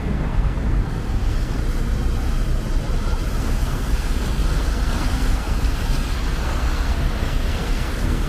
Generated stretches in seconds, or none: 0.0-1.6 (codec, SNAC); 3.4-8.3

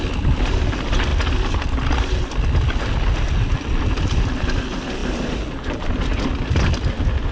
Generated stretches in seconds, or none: none

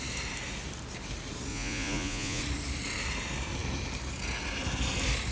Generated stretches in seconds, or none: 1.5-2.4 (vocoder, Vocos)